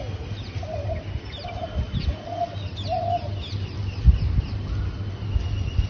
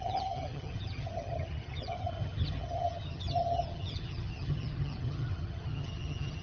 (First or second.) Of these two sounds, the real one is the first